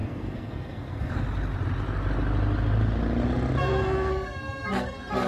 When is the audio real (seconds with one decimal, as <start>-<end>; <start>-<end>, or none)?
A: 1.1-3.6